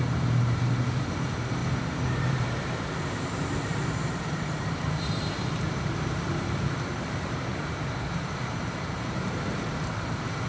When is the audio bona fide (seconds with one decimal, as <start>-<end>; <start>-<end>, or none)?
none